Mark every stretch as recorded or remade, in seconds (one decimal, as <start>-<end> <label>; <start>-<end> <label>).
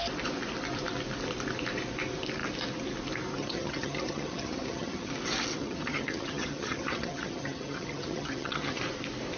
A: 0.0-3.4 recorded; 3.4-5.1 remade; 5.1-5.5 recorded; 5.5-8.8 remade; 8.8-9.4 recorded